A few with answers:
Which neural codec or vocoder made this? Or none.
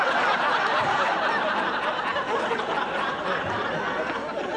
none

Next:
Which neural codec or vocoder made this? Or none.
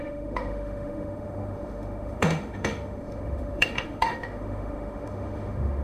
autoencoder, DAC-VAE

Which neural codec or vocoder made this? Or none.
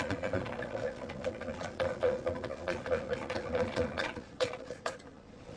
vocoder, Vocos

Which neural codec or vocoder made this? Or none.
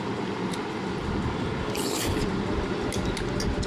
none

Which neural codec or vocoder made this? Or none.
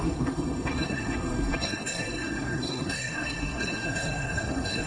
codec, SNAC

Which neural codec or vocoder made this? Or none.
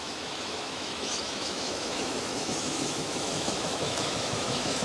autoencoder, DAC-VAE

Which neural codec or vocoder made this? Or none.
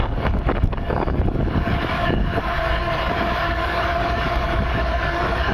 codec, DAC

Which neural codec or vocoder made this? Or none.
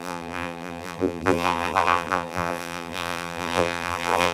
vocoder, BigVGAN v2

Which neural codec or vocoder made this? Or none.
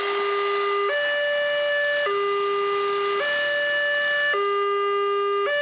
none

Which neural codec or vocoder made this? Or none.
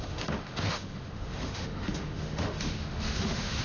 autoencoder, DAC-VAE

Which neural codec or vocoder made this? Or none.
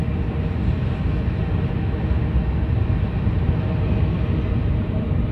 none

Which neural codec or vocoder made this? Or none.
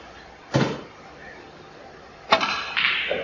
none